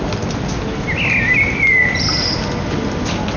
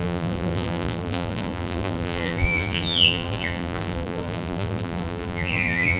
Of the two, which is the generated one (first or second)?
second